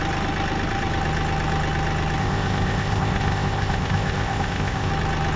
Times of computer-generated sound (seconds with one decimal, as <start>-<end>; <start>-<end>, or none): 2.2-4.9